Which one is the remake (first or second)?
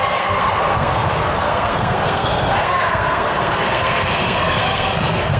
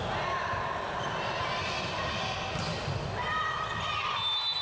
first